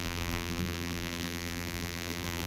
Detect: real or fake fake